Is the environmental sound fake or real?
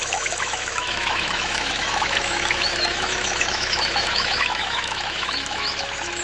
fake